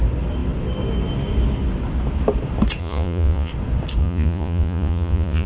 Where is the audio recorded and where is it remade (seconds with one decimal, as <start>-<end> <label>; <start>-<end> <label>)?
0.0-2.8 recorded; 2.8-3.5 remade; 3.5-4.0 recorded; 4.0-5.5 remade